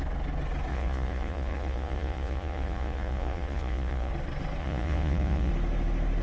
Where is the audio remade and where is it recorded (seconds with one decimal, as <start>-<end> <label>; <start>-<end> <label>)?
0.0-0.7 recorded; 0.7-4.1 remade; 4.1-4.6 recorded; 4.6-5.5 remade; 5.5-6.2 recorded